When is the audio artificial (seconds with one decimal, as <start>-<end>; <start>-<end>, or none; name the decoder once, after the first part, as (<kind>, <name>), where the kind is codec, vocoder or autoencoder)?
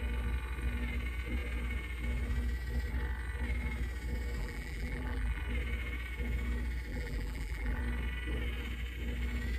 4.4-5.4 (vocoder, BigVGAN v2); 6.9-7.8